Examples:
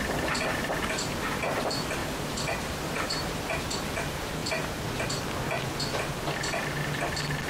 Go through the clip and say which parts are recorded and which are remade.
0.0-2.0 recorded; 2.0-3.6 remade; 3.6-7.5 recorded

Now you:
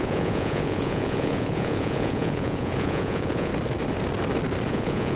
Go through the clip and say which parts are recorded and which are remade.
0.0-3.5 remade; 3.5-4.7 recorded; 4.7-5.2 remade

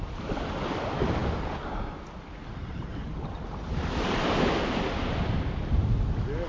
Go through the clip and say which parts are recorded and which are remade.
0.0-6.5 recorded

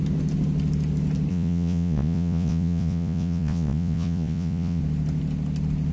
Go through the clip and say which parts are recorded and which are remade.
0.0-1.3 recorded; 1.3-4.8 remade; 4.8-5.9 recorded

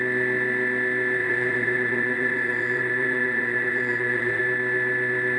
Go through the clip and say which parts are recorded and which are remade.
0.0-1.2 recorded; 1.2-4.4 remade; 4.4-5.4 recorded